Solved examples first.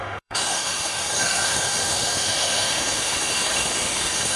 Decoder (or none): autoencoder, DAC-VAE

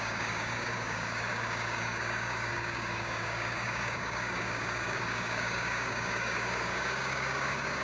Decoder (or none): codec, DAC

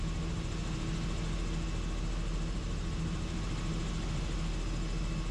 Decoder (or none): none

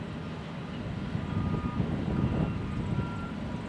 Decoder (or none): none